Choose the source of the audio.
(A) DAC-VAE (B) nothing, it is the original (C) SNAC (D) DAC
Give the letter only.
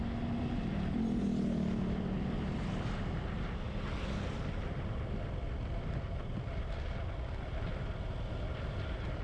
B